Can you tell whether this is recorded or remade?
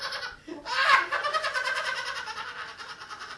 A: recorded